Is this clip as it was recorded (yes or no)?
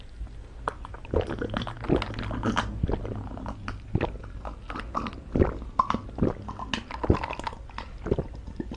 yes